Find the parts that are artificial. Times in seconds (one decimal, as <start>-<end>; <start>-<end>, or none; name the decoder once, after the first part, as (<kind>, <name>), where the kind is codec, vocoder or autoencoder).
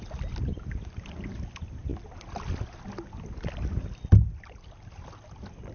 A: none